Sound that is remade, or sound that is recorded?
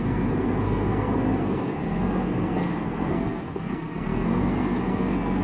remade